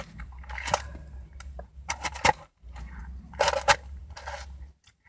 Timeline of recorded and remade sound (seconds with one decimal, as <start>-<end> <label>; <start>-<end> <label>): 0.0-3.0 remade; 3.0-4.0 recorded; 4.0-5.1 remade